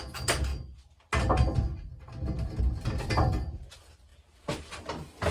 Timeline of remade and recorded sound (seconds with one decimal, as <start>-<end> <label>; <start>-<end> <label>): 0.0-5.3 recorded